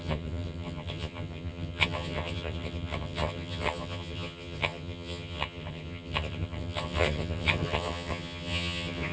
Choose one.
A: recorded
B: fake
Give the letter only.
B